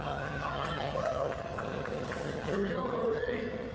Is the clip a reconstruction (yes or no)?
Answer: yes